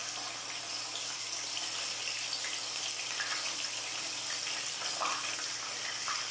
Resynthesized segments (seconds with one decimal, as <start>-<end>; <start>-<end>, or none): none